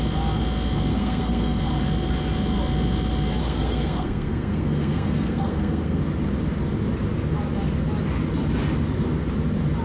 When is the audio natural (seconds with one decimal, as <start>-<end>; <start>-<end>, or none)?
0.0-0.9; 1.6-3.4; 6.0-9.8